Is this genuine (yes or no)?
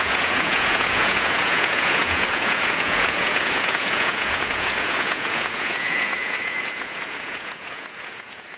no